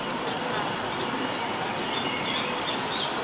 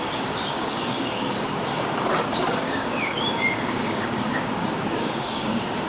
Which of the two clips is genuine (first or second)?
first